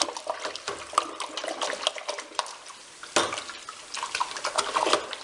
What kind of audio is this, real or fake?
real